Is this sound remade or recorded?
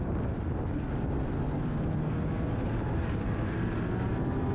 recorded